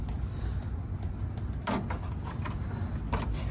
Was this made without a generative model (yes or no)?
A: yes